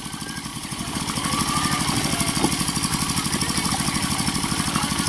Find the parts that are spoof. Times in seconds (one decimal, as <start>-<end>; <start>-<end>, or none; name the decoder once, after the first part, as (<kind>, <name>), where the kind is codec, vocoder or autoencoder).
0.5-1.0 (vocoder, Vocos)